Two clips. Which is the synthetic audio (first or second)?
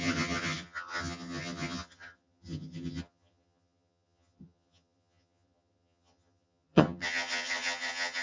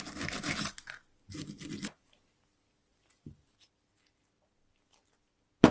first